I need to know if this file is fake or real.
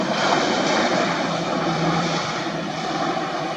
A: fake